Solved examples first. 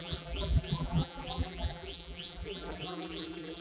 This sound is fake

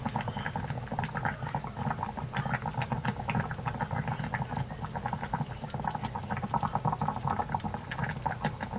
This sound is real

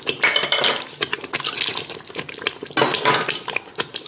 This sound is real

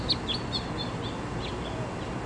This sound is real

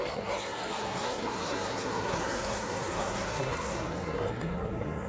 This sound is fake